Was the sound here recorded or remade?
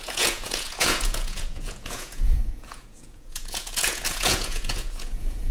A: remade